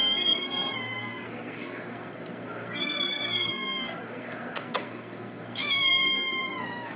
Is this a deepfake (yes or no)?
yes